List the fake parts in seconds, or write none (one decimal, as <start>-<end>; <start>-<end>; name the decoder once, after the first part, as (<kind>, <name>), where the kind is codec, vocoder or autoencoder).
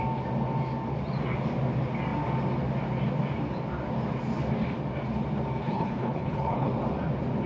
5.6-6.7 (codec, HILCodec)